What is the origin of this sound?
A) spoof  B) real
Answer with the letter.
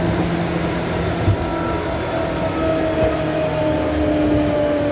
B